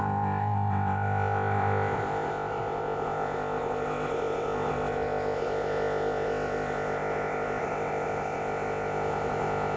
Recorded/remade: remade